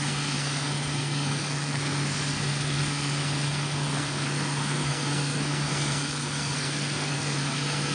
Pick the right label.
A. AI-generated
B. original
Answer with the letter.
A